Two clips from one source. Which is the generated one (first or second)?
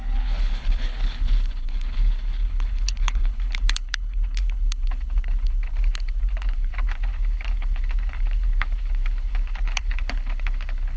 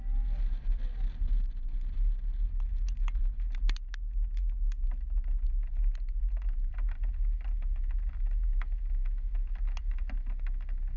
first